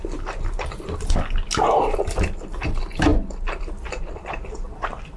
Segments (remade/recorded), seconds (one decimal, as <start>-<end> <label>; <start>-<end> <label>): 0.0-5.2 recorded